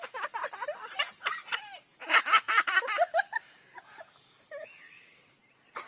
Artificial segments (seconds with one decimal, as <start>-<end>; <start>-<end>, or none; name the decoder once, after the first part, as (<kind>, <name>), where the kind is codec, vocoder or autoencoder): 1.9-5.4 (autoencoder, DAC-VAE)